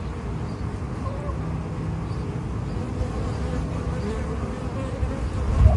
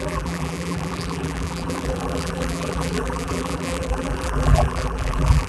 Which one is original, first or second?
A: first